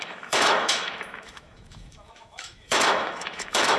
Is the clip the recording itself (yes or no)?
no